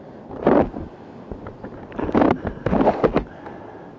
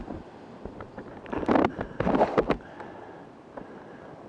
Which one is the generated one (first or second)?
second